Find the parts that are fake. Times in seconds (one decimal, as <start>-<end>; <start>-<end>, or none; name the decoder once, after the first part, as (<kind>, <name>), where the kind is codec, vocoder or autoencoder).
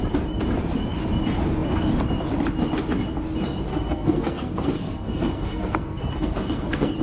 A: 3.7-7.0 (codec, SNAC)